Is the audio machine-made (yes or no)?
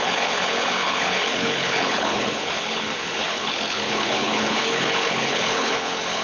yes